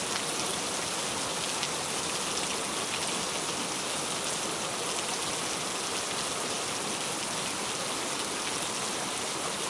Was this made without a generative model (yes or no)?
yes